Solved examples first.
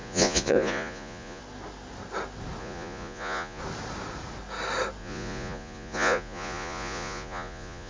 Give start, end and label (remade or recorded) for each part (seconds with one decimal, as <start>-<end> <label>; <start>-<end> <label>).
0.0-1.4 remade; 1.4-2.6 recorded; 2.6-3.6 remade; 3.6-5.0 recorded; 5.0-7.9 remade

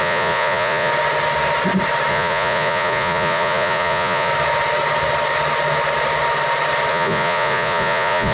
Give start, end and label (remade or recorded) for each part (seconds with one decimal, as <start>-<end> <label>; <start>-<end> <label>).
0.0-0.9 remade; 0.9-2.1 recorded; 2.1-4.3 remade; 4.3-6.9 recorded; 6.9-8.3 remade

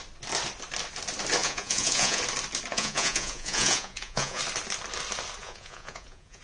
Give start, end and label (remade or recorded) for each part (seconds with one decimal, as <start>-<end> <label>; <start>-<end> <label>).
0.0-1.4 recorded; 1.4-2.2 remade; 2.2-2.7 recorded; 2.7-4.4 remade; 4.4-5.4 recorded; 5.4-6.4 remade